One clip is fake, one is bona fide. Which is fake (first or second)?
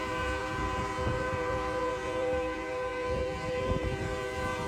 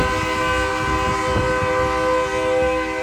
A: first